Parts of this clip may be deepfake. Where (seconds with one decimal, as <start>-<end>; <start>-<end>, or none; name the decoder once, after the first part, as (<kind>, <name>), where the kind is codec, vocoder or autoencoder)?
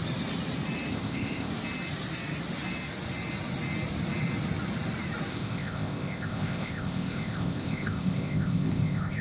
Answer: 0.9-1.5 (codec, ZipCodec); 5.3-9.2